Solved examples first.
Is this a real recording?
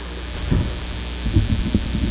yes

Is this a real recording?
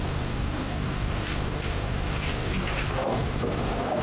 no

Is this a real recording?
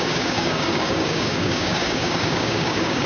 no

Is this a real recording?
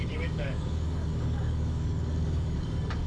no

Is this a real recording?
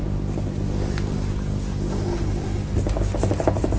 yes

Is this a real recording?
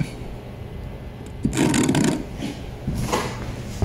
yes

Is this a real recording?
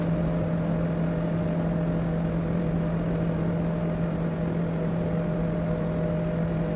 yes